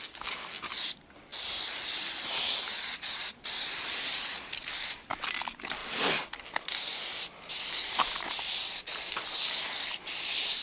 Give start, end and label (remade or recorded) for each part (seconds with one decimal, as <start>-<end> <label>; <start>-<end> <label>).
0.0-10.6 recorded